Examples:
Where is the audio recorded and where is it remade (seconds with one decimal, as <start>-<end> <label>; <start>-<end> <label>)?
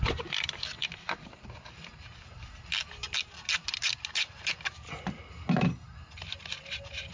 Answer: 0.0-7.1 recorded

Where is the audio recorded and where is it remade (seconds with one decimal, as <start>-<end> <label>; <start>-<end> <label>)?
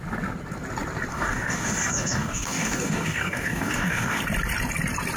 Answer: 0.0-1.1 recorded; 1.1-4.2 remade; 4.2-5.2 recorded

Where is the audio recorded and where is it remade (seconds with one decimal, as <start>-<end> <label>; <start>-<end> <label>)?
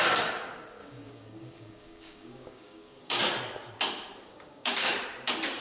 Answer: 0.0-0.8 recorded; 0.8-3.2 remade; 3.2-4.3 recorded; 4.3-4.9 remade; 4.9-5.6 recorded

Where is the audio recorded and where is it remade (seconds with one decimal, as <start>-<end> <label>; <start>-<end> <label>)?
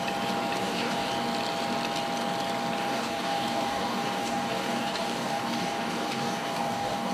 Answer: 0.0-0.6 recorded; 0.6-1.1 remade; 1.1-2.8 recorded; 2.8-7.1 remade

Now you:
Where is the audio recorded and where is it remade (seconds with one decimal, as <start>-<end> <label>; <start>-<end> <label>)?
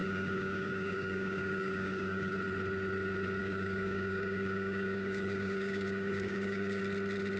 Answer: 0.0-2.3 remade; 2.3-3.4 recorded; 3.4-6.8 remade; 6.8-7.4 recorded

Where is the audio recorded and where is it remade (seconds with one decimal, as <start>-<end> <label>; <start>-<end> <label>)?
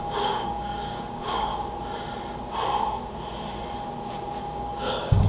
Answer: 0.0-1.5 remade; 1.5-4.4 recorded; 4.4-5.3 remade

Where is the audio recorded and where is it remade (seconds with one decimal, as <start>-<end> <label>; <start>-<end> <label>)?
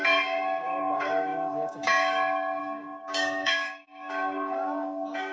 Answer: 0.0-5.3 remade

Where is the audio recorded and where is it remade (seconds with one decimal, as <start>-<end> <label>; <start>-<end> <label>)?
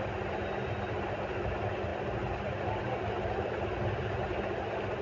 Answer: 0.0-5.0 recorded